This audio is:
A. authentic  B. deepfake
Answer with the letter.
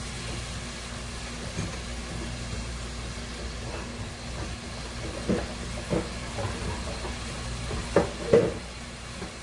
A